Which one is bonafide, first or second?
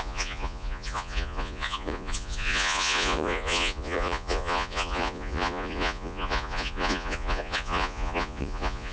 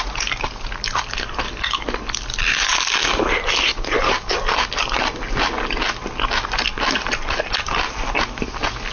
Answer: second